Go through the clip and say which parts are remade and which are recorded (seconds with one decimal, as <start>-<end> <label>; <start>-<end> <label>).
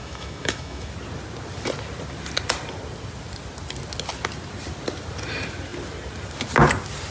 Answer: 0.0-0.9 remade; 0.9-7.1 recorded